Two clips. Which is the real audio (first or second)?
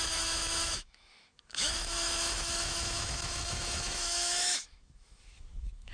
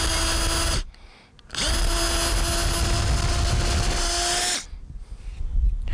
second